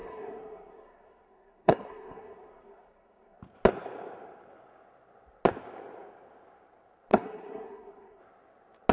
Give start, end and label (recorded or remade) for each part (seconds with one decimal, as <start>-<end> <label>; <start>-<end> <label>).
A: 0.0-3.4 remade; 3.4-7.1 recorded; 7.1-8.2 remade; 8.2-8.9 recorded